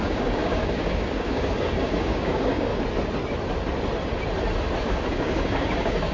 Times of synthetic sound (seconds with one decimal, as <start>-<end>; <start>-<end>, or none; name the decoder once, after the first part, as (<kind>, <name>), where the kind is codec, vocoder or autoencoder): 0.0-2.7 (codec, DAC); 4.8-6.1